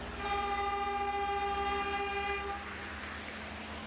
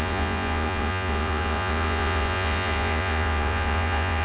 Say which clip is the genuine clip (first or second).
first